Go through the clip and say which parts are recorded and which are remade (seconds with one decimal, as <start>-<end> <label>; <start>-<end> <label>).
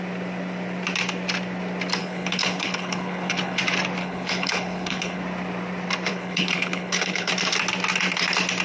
0.0-2.0 recorded; 2.0-3.6 remade; 3.6-4.0 recorded; 4.0-5.2 remade; 5.2-6.1 recorded; 6.1-7.3 remade; 7.3-8.6 recorded